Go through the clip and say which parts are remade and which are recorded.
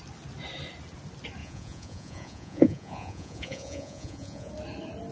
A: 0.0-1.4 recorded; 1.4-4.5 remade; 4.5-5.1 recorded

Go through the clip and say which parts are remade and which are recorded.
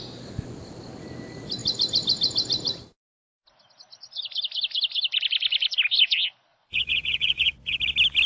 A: 0.0-6.5 recorded; 6.5-7.8 remade; 7.8-8.3 recorded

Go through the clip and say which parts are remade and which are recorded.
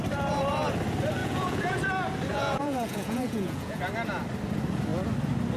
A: 0.0-1.2 recorded; 1.2-1.8 remade; 1.8-2.3 recorded; 2.3-3.8 remade; 3.8-5.6 recorded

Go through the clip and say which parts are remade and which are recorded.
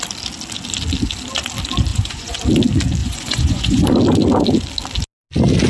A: 0.0-1.9 recorded; 1.9-2.4 remade; 2.4-3.0 recorded; 3.0-3.9 remade; 3.9-5.7 recorded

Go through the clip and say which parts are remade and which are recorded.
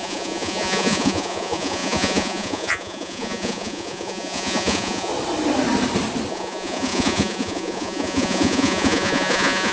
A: 0.0-5.1 remade; 5.1-6.3 recorded; 6.3-9.7 remade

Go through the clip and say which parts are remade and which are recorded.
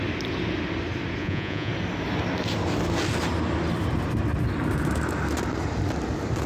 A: 0.0-1.2 recorded; 1.2-1.7 remade; 1.7-6.5 recorded